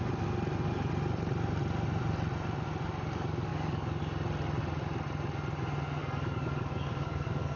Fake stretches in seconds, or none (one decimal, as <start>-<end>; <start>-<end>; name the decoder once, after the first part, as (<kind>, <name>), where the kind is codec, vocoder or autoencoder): 3.5-4.0 (codec, DAC); 6.0-7.6